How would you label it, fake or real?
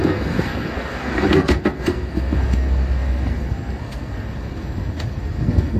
fake